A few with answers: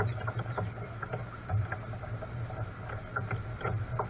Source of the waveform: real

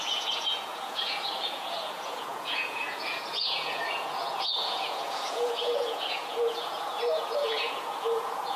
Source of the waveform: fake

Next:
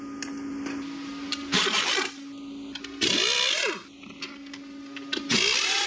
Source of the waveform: real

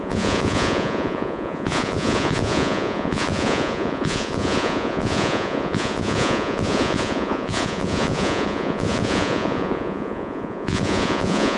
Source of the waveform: fake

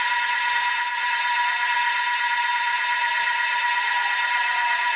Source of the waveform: fake